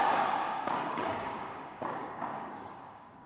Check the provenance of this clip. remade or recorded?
remade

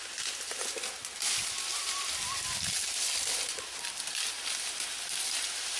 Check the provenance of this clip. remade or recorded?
recorded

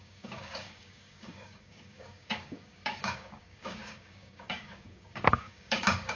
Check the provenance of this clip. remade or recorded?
remade